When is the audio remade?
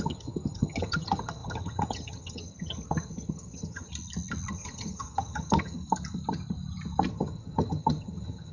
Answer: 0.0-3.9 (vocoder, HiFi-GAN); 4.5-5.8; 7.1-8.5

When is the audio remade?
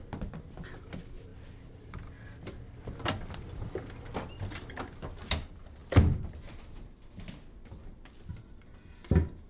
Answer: none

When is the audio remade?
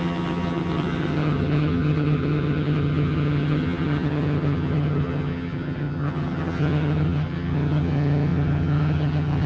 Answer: 0.0-9.5 (vocoder, HiFi-GAN)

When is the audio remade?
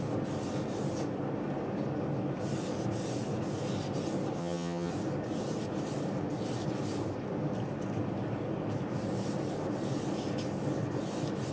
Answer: 4.4-4.9 (vocoder, HiFi-GAN)